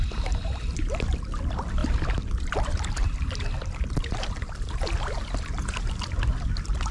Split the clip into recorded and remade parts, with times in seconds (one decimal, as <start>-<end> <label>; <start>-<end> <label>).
0.0-1.8 recorded; 1.8-4.5 remade; 4.5-6.9 recorded